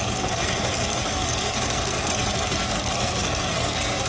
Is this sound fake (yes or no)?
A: yes